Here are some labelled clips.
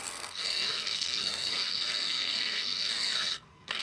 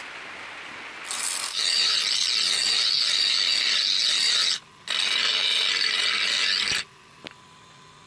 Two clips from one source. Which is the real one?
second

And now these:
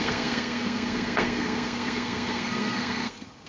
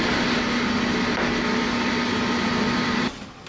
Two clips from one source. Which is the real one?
second